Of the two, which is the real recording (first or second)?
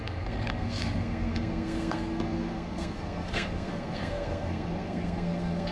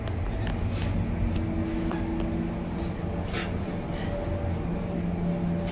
second